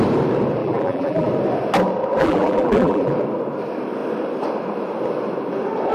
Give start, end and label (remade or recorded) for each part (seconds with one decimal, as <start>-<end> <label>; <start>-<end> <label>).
0.0-0.6 recorded; 0.6-1.3 remade; 1.3-2.2 recorded; 2.2-3.1 remade; 3.1-5.9 recorded